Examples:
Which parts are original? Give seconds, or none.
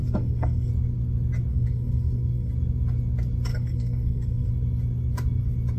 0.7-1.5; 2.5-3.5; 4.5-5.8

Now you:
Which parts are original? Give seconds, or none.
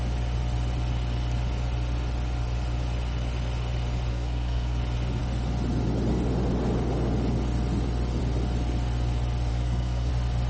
0.0-4.1; 4.8-9.5; 10.1-10.5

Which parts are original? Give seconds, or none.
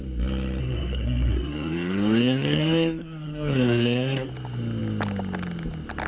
0.0-0.6; 4.3-6.1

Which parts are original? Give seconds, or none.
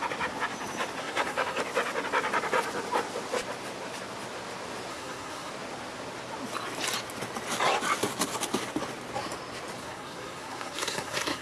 0.0-1.0; 1.6-4.9; 5.5-9.8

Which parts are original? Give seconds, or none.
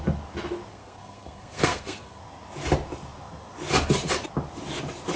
0.0-0.7; 2.2-5.2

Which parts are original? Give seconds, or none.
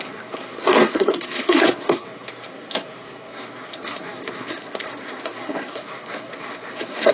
none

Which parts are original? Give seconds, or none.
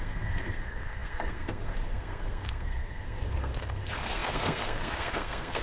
none